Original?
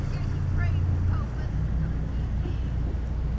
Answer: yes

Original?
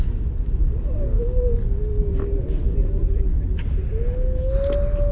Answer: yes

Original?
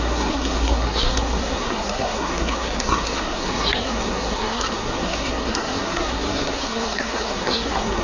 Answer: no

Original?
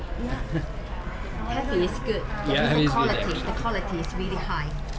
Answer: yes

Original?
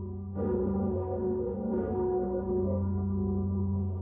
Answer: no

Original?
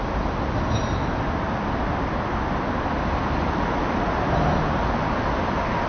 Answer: yes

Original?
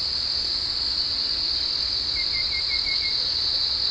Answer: yes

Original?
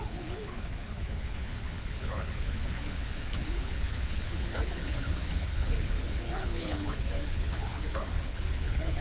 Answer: no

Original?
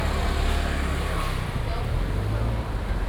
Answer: yes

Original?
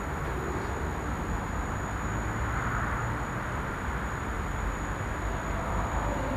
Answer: yes